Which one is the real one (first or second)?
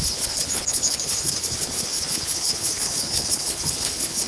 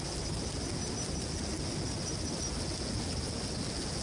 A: second